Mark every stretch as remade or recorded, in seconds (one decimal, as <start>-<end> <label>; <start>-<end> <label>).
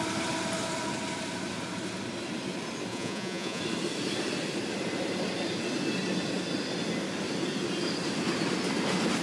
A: 0.0-2.9 recorded; 2.9-3.6 remade; 3.6-9.2 recorded